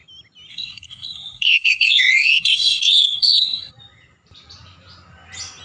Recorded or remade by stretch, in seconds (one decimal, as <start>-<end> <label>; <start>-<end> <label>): 0.0-0.5 recorded; 0.5-3.7 remade; 3.7-5.6 recorded